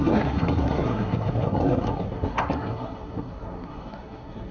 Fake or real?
fake